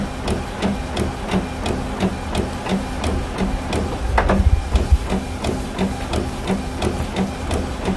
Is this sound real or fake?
real